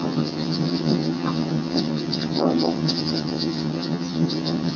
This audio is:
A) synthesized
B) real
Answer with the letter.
A